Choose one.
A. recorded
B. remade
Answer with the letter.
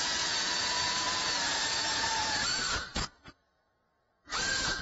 B